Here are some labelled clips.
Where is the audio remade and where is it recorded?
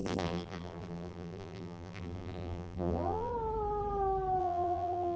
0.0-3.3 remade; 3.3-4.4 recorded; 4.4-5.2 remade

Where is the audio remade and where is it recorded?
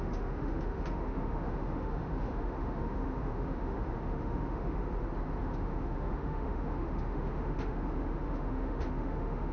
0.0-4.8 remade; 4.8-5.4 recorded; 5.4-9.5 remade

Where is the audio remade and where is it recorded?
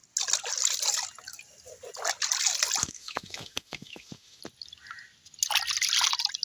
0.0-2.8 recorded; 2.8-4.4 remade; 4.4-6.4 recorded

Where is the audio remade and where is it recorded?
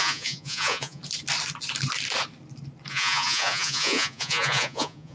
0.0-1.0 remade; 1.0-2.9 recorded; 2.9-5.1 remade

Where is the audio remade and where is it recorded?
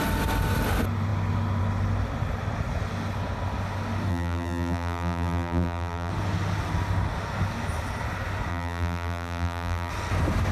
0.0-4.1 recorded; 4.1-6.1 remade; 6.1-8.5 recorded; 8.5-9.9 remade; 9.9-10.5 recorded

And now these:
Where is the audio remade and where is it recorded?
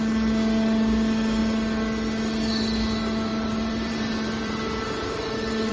0.0-3.3 recorded; 3.3-5.7 remade